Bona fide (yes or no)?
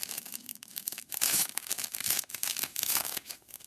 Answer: no